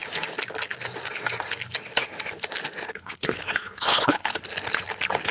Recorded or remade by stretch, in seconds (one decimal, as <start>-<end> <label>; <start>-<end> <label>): 0.0-2.9 recorded; 2.9-4.4 remade; 4.4-5.3 recorded